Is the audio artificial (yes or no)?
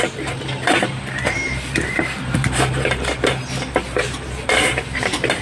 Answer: yes